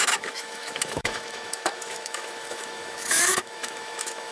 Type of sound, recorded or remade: remade